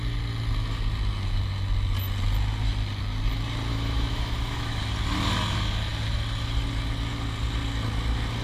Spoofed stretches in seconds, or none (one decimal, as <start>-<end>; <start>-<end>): 3.7-4.8